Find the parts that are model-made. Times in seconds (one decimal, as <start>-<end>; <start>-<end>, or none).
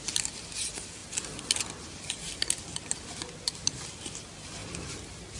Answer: none